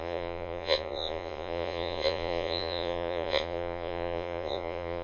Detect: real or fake fake